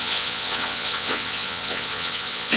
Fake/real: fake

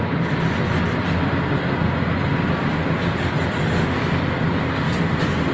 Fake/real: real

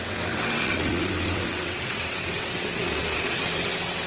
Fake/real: fake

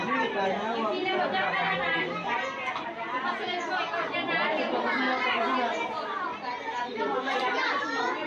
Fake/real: real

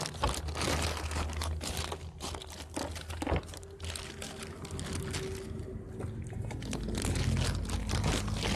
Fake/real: real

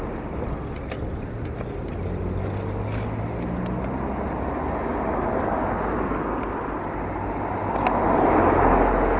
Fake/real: real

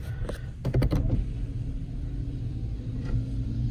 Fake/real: fake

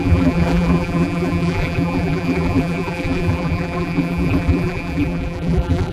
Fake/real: fake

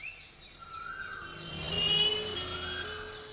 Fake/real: real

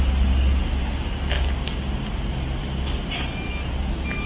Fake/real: real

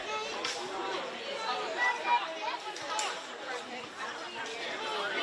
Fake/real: real